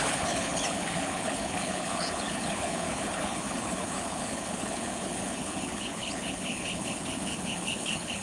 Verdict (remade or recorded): remade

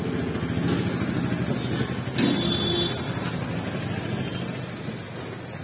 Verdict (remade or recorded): recorded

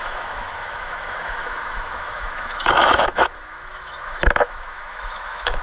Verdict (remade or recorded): remade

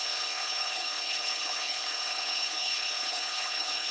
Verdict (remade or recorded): remade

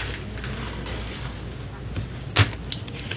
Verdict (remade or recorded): recorded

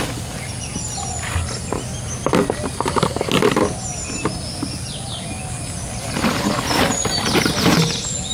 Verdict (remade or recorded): recorded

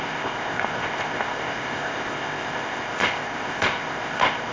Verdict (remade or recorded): remade